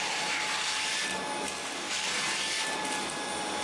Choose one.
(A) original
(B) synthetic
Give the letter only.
A